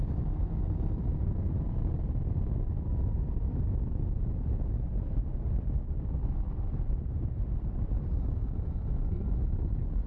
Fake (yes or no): yes